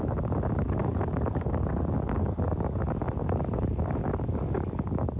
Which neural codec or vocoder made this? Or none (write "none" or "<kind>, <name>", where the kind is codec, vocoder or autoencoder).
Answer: codec, DAC